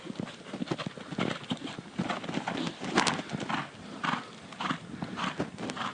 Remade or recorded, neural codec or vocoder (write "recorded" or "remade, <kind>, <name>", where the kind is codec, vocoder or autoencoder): recorded